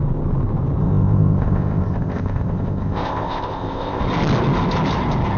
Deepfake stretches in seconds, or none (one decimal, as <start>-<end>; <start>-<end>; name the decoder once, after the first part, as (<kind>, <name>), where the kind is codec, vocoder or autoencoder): 0.8-4.0 (codec, ZipCodec)